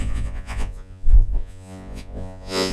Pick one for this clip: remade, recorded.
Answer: remade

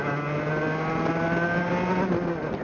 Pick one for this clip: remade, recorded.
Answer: recorded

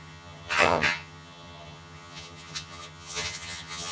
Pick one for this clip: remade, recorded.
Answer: remade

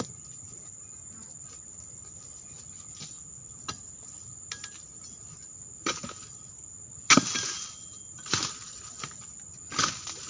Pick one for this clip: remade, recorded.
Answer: recorded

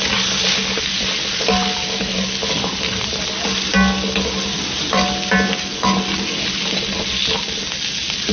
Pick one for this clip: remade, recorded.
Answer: recorded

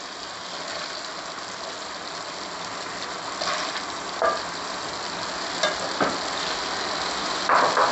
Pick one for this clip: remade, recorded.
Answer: recorded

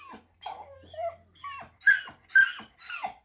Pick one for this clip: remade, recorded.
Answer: recorded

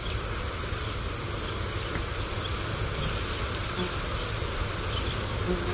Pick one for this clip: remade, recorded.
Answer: recorded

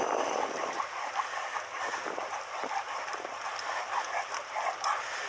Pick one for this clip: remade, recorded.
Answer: remade